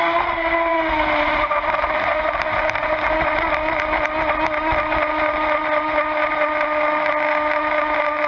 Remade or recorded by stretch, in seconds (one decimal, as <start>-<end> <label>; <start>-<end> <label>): 0.0-0.7 recorded; 0.7-2.2 remade; 2.2-8.3 recorded